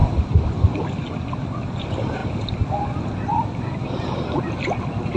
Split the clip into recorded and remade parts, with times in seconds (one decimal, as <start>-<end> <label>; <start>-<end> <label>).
0.0-5.2 recorded